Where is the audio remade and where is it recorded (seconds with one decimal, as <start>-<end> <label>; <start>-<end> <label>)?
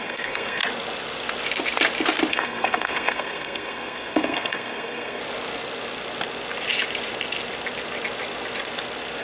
0.0-0.6 remade; 0.6-2.3 recorded; 2.3-5.2 remade; 5.2-9.2 recorded